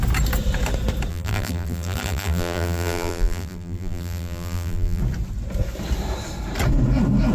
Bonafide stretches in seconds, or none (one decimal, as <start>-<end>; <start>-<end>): 0.0-1.1; 5.0-7.3